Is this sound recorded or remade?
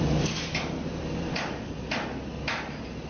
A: remade